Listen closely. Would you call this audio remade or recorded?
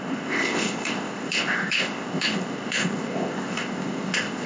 remade